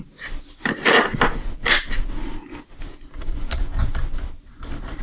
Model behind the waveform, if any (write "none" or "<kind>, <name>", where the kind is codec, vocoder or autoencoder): none